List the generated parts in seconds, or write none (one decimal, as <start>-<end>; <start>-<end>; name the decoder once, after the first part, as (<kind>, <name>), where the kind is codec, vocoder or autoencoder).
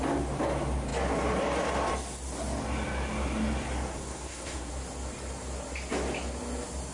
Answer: 3.9-4.7 (codec, SNAC)